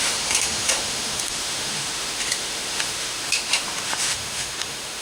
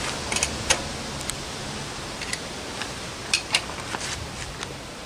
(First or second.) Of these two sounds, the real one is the second